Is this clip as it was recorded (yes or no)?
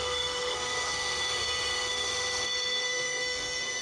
no